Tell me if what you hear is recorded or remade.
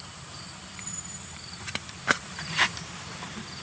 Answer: remade